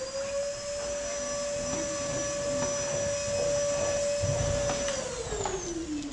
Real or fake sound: real